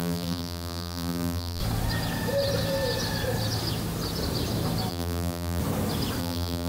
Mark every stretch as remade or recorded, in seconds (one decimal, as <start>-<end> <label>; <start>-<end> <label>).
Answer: 0.0-1.6 remade; 1.6-4.9 recorded; 4.9-5.6 remade; 5.6-6.2 recorded; 6.2-6.7 remade